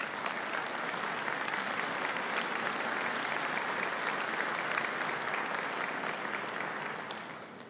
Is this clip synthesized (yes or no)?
yes